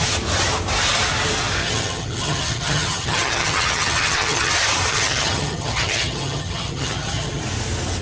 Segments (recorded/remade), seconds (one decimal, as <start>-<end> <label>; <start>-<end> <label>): 0.0-1.6 recorded; 1.6-4.5 remade; 4.5-4.9 recorded; 4.9-7.4 remade; 7.4-8.0 recorded

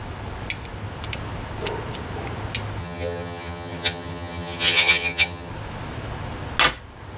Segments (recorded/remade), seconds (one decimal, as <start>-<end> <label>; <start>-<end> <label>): 0.0-2.8 recorded; 2.8-5.5 remade; 5.5-7.2 recorded